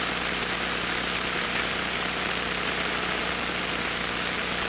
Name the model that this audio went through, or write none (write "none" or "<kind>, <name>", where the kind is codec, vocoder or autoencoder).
none